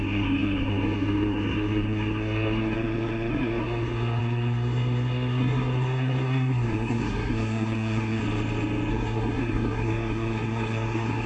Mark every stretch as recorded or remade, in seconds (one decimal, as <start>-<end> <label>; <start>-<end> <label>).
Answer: 0.0-8.2 remade; 8.2-8.9 recorded; 8.9-11.3 remade